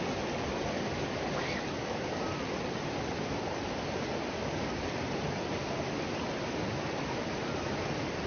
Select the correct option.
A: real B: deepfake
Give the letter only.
A